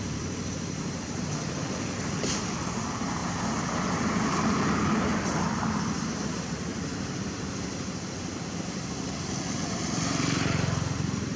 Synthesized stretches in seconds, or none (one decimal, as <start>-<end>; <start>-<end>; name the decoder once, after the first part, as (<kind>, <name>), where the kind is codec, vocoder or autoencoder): none